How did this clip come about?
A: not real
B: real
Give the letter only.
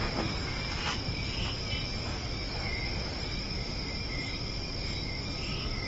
B